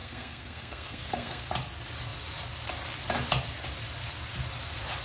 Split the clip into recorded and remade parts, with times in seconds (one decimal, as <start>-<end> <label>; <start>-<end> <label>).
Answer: 0.0-1.5 remade; 1.5-5.0 recorded